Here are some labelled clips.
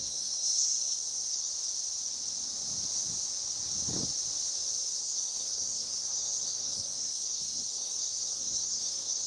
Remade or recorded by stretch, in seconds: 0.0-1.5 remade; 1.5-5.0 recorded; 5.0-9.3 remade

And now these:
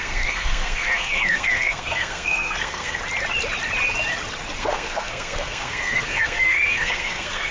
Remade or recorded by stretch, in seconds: 0.0-3.0 remade; 3.0-4.6 recorded; 4.6-7.5 remade

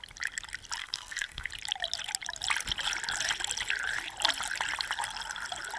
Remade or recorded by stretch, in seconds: 0.0-0.8 recorded; 0.8-1.5 remade; 1.5-5.8 recorded

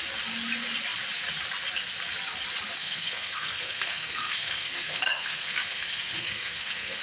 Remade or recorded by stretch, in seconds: 0.0-2.8 recorded; 2.8-7.0 remade

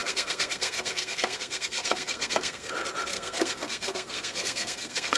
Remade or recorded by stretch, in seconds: 0.0-2.7 remade; 2.7-3.1 recorded; 3.1-5.2 remade

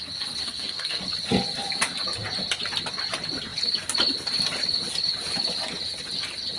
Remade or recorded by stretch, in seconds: 0.0-0.4 recorded; 0.4-1.0 remade; 1.0-6.6 recorded

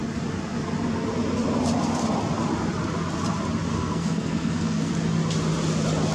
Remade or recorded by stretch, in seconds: 0.0-3.7 recorded; 3.7-4.9 remade; 4.9-6.1 recorded

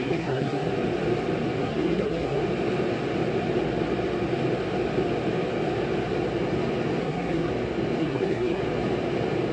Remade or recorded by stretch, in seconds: 0.0-0.7 remade; 0.7-1.6 recorded; 1.6-2.4 remade; 2.4-7.0 recorded; 7.0-7.5 remade; 7.5-8.0 recorded; 8.0-8.6 remade; 8.6-9.5 recorded